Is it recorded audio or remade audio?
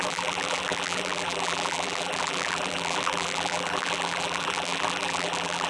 remade